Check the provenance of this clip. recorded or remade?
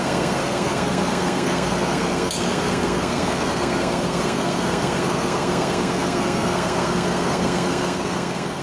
remade